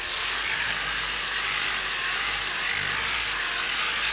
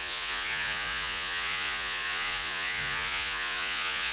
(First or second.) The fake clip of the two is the second